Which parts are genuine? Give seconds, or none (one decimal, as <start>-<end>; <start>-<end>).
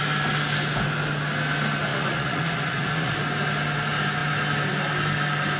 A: 0.0-1.9; 3.2-5.6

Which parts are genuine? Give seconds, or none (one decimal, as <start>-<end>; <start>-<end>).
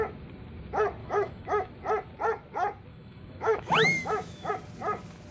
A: 0.0-1.0; 1.7-2.9; 4.5-5.3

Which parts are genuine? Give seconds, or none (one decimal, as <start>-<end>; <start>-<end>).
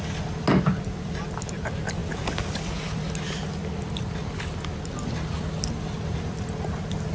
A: 0.0-7.1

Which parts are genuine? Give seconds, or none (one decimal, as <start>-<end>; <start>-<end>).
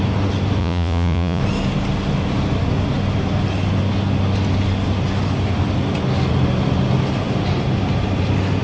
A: 0.0-0.6; 1.4-8.6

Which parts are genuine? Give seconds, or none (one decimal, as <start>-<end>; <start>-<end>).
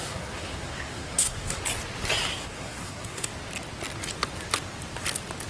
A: 1.6-2.3; 3.3-5.5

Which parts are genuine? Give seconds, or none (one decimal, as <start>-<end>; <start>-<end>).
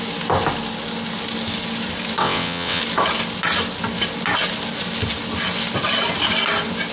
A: 0.0-2.2; 2.8-6.9